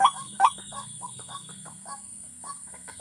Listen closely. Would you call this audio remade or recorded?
remade